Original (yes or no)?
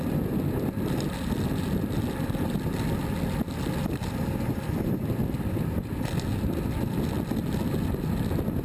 yes